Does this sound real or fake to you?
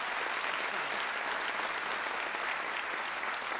real